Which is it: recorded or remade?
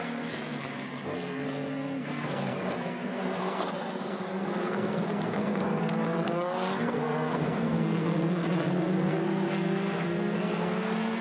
remade